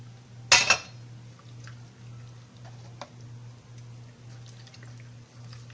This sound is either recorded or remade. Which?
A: recorded